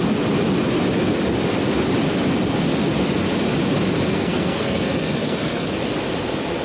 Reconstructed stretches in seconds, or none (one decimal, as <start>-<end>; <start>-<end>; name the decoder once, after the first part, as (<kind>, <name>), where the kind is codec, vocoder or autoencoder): 4.1-5.7 (codec, SNAC)